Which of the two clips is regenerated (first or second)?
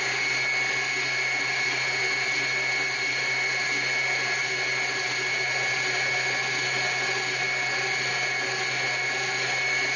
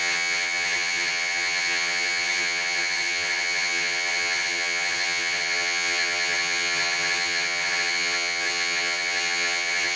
second